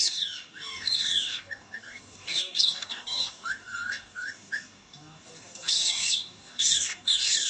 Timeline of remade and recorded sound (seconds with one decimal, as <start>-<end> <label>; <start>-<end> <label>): 0.0-7.5 remade